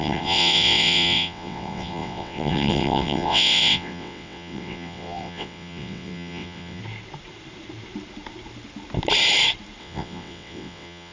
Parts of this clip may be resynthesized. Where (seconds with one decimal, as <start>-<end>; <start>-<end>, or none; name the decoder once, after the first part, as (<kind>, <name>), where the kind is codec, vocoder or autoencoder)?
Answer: 0.0-6.8 (vocoder, WaveNeXt); 9.8-11.1